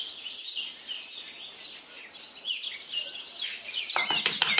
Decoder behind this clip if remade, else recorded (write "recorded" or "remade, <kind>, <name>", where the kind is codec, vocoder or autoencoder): recorded